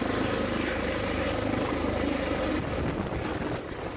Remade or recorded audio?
recorded